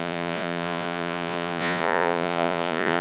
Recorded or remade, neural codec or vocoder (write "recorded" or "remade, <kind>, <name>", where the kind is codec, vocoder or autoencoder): remade, vocoder, Vocos